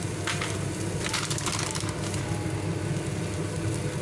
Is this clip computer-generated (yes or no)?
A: no